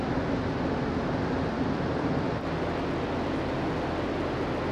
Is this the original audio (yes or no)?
yes